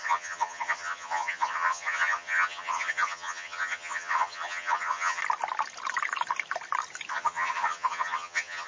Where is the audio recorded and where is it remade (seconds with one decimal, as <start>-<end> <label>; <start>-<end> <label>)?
0.0-5.2 remade; 5.2-7.1 recorded; 7.1-8.7 remade